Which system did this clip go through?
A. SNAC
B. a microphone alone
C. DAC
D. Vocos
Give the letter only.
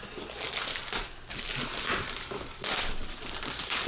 B